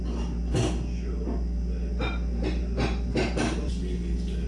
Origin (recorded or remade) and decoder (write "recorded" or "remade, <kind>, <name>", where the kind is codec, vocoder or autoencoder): recorded